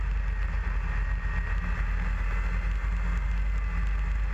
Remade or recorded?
recorded